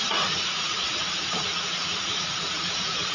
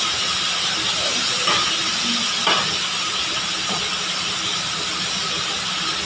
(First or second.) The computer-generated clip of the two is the first